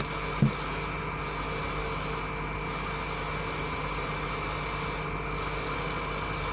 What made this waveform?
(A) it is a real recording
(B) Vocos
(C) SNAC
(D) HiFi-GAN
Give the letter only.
A